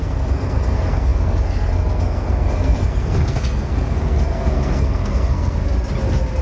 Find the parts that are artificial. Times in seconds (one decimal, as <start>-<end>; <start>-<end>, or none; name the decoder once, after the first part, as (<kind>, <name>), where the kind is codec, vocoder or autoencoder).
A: 0.0-5.6 (codec, SNAC)